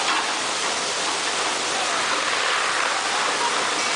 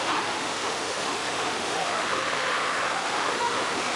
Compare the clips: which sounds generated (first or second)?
second